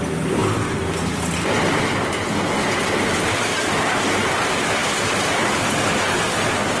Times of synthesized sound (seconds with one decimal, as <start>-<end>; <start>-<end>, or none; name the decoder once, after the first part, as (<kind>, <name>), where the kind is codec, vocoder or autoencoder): none